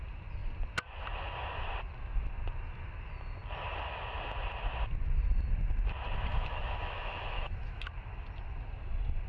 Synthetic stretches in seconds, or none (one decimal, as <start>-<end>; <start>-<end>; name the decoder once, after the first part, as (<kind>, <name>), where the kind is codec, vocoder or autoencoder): 6.3-7.8 (autoencoder, DAC-VAE)